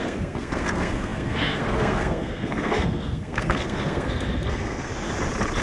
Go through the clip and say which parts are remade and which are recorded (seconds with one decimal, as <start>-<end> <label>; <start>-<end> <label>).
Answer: 0.0-4.9 remade; 4.9-5.6 recorded